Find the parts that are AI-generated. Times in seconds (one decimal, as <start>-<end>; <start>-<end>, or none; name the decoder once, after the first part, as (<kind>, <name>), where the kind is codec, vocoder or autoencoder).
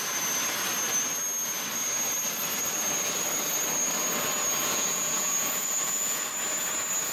4.6-6.3 (vocoder, Vocos)